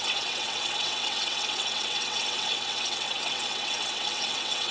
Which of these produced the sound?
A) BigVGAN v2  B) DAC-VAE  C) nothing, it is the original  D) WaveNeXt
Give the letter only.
D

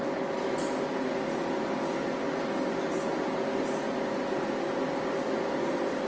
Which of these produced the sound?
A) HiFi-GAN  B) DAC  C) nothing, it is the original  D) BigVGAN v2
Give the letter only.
C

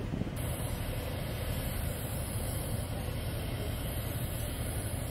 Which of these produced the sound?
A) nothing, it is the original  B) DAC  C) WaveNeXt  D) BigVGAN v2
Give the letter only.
D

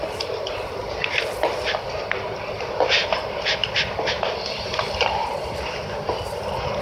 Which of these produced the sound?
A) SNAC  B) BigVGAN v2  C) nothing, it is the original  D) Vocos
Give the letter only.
C